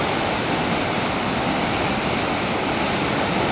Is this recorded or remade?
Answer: recorded